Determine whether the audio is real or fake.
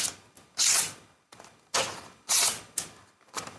real